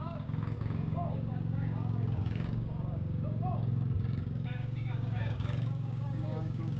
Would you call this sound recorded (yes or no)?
no